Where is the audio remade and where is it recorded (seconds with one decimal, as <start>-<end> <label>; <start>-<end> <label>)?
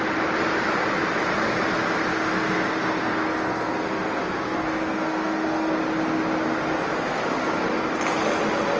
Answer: 0.0-2.1 recorded; 2.1-5.8 remade; 5.8-8.8 recorded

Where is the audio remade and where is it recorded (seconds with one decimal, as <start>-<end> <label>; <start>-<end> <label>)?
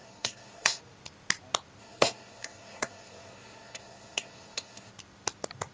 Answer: 0.0-0.8 remade; 0.8-1.8 recorded; 1.8-4.9 remade; 4.9-5.7 recorded